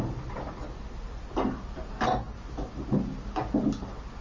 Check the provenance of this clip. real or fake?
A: real